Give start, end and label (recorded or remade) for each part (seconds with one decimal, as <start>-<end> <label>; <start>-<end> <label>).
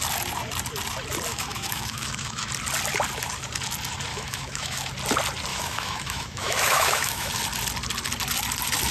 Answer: 0.0-1.3 recorded; 1.3-2.5 remade; 2.5-4.1 recorded; 4.1-4.9 remade; 4.9-5.5 recorded; 5.5-7.3 remade; 7.3-8.9 recorded